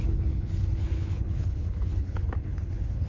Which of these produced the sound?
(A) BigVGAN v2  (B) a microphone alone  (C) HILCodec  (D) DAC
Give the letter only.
C